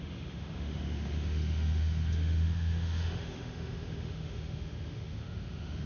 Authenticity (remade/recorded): remade